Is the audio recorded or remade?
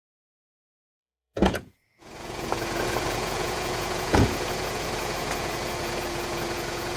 remade